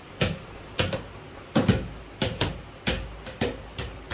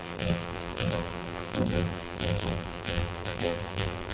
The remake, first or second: second